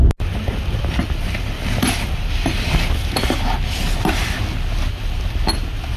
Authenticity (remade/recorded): recorded